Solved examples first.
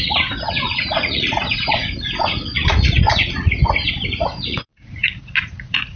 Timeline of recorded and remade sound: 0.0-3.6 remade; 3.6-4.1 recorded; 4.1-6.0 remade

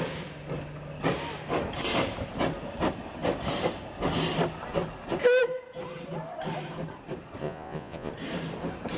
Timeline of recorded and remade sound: 0.0-7.4 recorded; 7.4-8.1 remade; 8.1-9.0 recorded

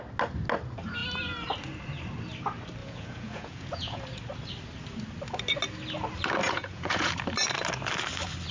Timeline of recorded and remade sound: 0.0-2.8 recorded; 2.8-4.0 remade; 4.0-6.4 recorded; 6.4-7.1 remade; 7.1-8.5 recorded

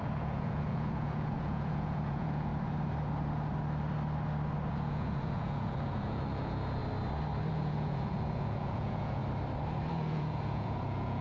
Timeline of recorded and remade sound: 0.0-2.5 remade; 2.5-4.7 recorded; 4.7-6.8 remade; 6.8-7.5 recorded; 7.5-9.2 remade; 9.2-9.9 recorded; 9.9-11.2 remade

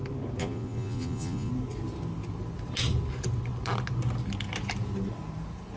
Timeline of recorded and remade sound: 0.0-0.4 recorded; 0.4-1.5 remade; 1.5-5.8 recorded